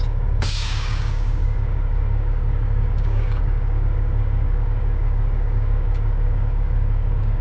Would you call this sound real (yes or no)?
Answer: no